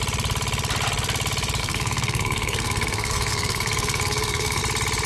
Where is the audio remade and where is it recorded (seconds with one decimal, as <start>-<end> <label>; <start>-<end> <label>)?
0.0-1.6 recorded; 1.6-4.6 remade; 4.6-5.1 recorded